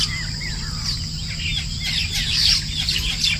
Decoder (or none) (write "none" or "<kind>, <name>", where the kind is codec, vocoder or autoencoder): none